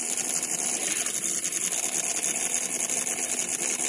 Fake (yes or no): no